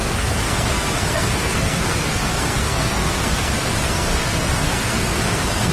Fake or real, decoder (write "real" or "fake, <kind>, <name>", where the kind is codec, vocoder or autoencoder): fake, codec, SNAC